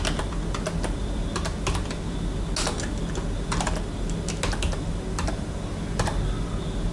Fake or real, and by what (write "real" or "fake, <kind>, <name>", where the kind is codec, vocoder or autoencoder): real